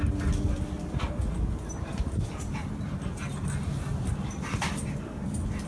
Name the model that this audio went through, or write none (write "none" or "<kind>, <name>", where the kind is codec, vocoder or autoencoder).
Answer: none